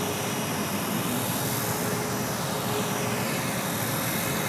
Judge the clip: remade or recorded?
recorded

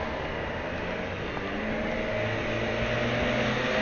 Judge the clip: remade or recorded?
recorded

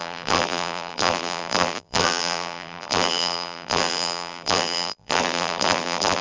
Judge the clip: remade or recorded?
remade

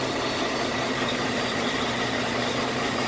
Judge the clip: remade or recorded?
remade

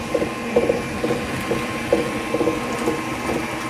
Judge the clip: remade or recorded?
recorded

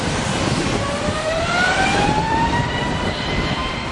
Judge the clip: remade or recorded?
remade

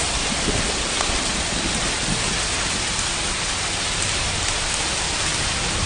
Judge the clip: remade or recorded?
recorded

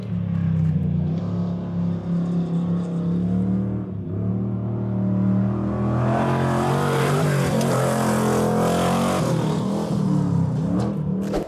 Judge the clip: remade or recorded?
recorded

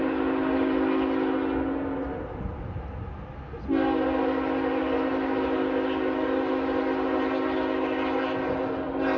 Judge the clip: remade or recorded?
recorded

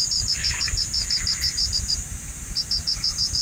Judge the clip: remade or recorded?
remade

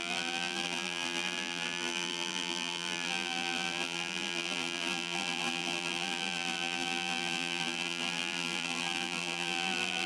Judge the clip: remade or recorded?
remade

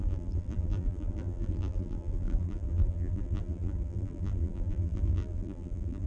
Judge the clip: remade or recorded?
remade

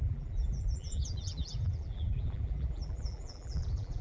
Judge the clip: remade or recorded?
remade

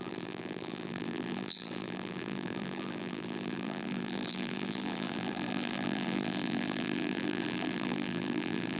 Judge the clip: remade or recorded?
remade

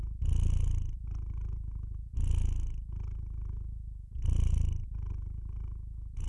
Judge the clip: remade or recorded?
recorded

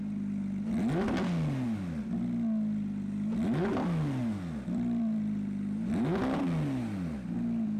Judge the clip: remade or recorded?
recorded